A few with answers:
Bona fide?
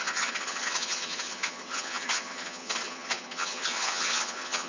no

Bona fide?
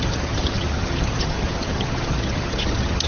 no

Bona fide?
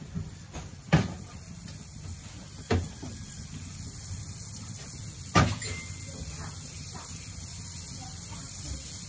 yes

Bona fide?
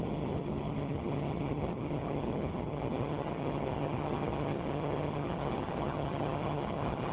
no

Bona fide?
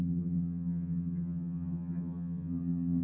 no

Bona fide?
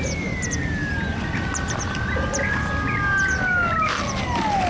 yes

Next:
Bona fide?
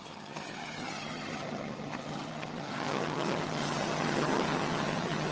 no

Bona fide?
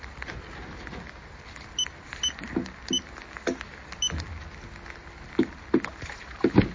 yes